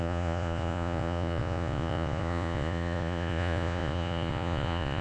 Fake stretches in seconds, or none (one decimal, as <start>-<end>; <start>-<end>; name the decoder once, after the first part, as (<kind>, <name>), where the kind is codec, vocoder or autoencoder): 0.0-5.0 (vocoder, Vocos)